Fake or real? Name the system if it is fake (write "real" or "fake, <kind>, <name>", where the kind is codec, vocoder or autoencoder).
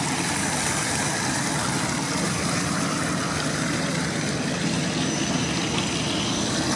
real